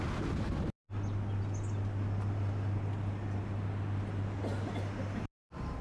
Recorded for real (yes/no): yes